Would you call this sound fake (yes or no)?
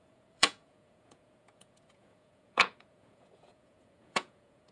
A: yes